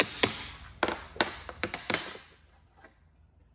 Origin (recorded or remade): recorded